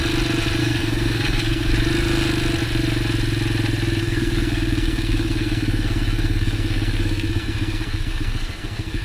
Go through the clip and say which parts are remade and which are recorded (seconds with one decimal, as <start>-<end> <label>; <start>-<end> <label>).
0.0-0.6 recorded; 0.6-1.7 remade; 1.7-4.0 recorded; 4.0-9.0 remade